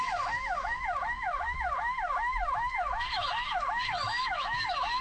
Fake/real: fake